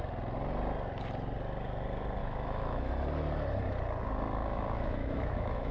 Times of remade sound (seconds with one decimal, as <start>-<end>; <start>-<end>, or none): 2.2-2.9; 4.4-5.7